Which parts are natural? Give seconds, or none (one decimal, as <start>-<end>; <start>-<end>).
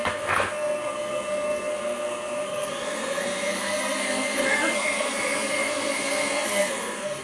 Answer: none